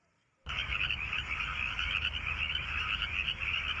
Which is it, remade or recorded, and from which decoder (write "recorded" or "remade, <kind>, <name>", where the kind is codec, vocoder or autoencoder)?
recorded